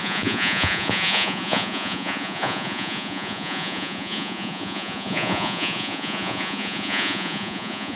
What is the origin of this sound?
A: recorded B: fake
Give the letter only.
B